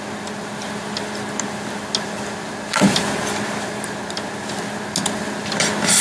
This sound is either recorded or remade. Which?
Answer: recorded